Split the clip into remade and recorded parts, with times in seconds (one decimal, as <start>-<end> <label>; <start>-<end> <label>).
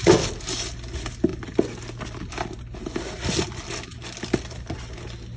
0.0-5.4 recorded